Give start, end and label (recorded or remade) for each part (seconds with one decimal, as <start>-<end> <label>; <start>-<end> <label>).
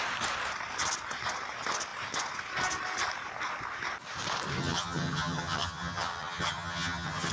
0.0-4.6 recorded; 4.6-7.3 remade